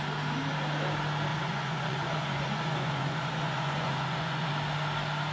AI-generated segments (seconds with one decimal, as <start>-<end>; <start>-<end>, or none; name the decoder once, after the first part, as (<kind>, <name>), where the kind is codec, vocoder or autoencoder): 1.3-4.5 (vocoder, Vocos)